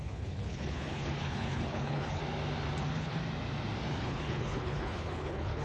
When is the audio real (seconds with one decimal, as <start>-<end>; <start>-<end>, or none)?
2.2-2.8; 3.2-4.0